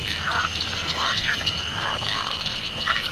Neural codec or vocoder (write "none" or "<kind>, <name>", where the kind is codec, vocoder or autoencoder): codec, SNAC